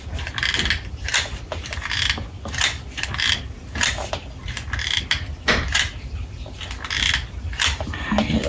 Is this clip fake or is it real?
real